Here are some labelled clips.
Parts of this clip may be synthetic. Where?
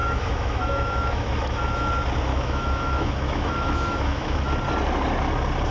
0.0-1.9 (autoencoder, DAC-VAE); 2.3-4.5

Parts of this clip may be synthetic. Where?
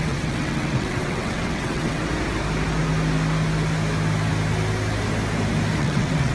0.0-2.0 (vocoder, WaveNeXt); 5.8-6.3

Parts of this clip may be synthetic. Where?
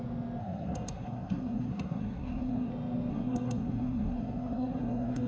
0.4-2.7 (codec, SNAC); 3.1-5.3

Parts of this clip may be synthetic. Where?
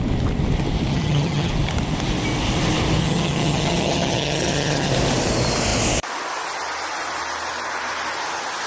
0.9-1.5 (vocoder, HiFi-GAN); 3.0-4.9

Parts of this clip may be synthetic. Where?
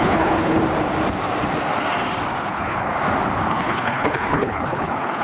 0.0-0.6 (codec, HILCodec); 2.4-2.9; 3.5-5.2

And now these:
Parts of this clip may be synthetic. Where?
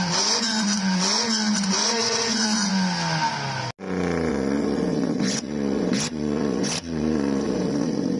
0.0-2.7 (vocoder, Vocos); 4.3-8.2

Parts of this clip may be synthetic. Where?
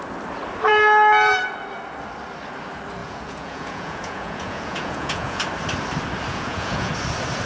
3.0-5.4 (vocoder, Vocos); 6.3-6.9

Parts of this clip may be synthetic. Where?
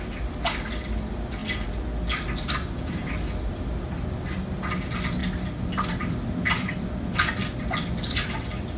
none